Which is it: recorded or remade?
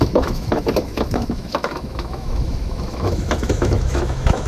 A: remade